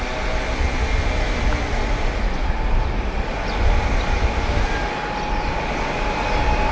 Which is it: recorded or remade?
recorded